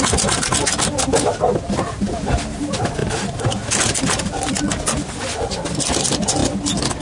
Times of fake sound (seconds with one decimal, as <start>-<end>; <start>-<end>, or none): none